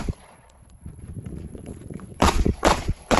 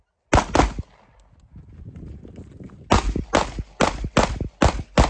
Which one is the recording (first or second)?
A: second